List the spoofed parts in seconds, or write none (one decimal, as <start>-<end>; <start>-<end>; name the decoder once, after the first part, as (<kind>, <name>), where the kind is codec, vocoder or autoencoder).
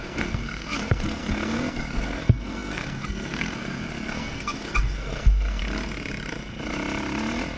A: 0.0-5.6 (codec, SNAC)